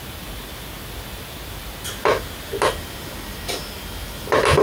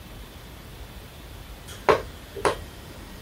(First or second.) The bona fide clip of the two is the first